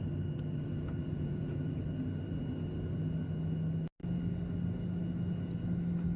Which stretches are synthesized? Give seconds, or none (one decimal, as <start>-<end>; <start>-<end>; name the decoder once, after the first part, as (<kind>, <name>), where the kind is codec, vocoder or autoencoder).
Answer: 1.0-1.8 (vocoder, Vocos)